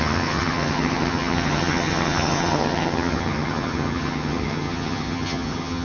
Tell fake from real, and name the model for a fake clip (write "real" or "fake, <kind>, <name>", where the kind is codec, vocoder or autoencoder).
fake, vocoder, HiFi-GAN